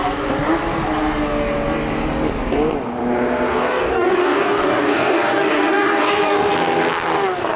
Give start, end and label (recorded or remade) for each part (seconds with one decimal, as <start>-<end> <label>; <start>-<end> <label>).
0.0-3.5 recorded; 3.5-6.5 remade; 6.5-7.6 recorded